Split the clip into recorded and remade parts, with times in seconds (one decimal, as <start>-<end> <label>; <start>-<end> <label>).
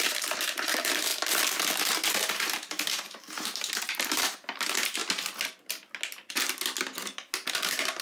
0.0-5.0 remade; 5.0-7.5 recorded; 7.5-8.0 remade